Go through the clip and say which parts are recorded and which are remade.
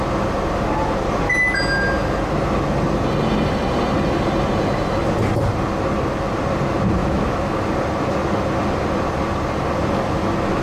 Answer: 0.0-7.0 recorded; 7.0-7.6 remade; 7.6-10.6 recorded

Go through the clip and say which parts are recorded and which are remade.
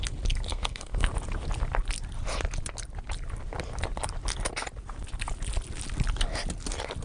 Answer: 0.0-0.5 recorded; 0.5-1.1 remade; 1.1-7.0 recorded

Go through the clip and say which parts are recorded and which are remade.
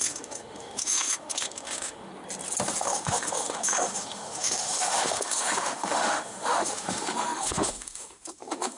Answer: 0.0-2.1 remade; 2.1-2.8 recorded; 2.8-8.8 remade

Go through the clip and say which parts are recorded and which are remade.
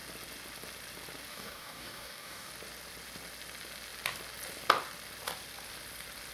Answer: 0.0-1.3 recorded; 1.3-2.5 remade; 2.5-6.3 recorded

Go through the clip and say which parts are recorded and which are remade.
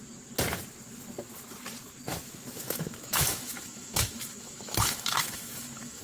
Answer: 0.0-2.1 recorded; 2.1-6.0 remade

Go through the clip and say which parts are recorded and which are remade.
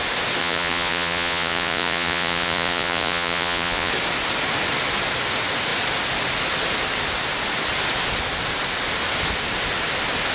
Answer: 0.0-0.4 recorded; 0.4-3.9 remade; 3.9-10.3 recorded